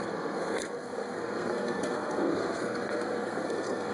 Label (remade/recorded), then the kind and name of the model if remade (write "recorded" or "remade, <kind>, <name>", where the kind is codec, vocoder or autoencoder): remade, codec, SNAC